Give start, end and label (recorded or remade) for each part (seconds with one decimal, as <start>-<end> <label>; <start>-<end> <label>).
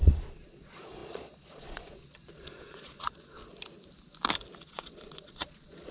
0.0-3.4 remade; 3.4-4.6 recorded; 4.6-5.9 remade